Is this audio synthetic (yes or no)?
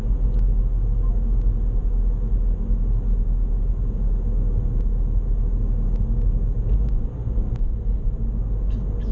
no